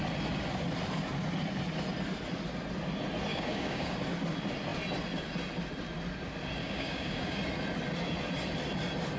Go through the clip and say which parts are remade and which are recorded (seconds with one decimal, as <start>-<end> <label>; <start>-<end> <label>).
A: 0.0-3.3 recorded; 3.3-3.9 remade; 3.9-6.6 recorded; 6.6-7.4 remade; 7.4-9.2 recorded